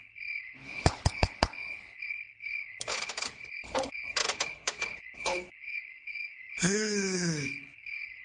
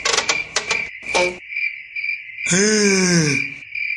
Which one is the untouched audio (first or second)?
second